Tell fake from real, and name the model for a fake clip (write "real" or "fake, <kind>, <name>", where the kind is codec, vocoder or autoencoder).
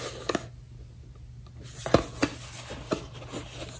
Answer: real